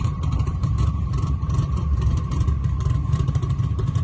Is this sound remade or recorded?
remade